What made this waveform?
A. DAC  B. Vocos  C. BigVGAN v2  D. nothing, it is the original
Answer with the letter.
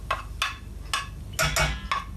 D